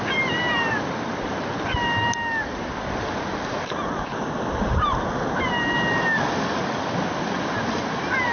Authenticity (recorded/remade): recorded